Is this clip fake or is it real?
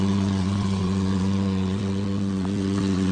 fake